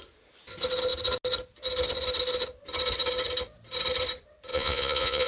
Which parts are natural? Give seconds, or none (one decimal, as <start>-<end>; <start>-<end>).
0.0-4.5